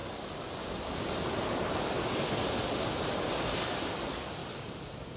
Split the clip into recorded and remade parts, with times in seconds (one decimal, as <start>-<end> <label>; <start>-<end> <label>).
0.0-4.4 recorded; 4.4-5.2 remade

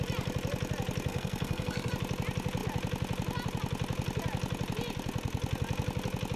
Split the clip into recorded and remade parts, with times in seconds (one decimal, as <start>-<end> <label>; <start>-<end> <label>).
0.0-1.1 recorded; 1.1-1.9 remade; 1.9-6.4 recorded